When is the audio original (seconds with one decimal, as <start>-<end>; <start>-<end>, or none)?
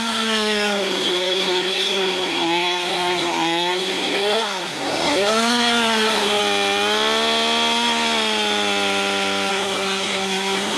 6.4-9.5